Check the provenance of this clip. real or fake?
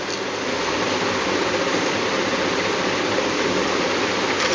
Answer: real